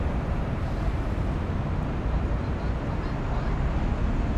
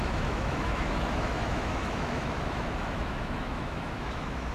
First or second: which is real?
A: first